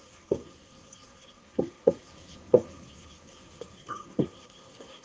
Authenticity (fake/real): fake